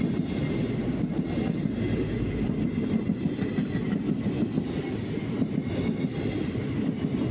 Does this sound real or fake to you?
real